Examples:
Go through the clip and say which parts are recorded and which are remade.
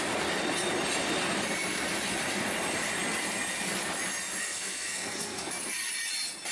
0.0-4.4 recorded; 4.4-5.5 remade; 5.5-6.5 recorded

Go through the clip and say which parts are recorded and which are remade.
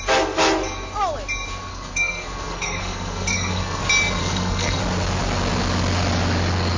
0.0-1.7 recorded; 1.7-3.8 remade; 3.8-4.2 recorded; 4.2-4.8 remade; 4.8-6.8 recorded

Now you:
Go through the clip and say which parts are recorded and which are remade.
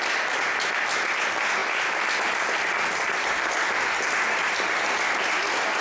0.0-5.8 recorded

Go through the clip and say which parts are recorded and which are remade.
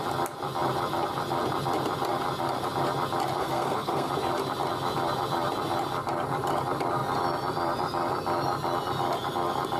0.0-3.4 recorded; 3.4-4.1 remade; 4.1-9.8 recorded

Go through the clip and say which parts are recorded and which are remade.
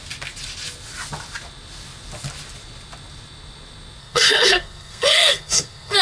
0.0-4.0 recorded; 4.0-6.0 remade